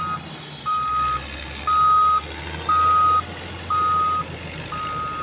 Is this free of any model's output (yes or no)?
yes